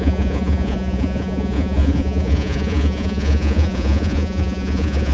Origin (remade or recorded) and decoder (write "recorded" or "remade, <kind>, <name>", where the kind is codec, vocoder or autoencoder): remade, vocoder, Vocos